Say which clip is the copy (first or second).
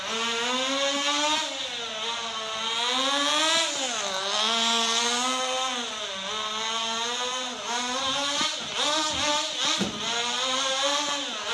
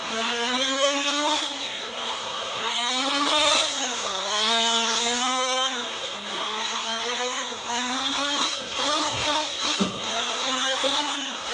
second